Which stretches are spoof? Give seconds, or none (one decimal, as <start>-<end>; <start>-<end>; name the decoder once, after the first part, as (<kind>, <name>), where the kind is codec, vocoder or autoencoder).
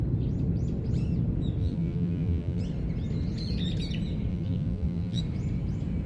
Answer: 1.6-2.6 (vocoder, BigVGAN v2); 4.3-5.2